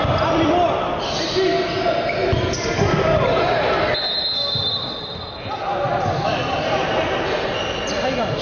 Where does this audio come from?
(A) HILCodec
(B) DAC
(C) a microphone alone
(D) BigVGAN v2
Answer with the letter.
C